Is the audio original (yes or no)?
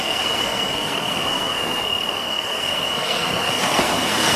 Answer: no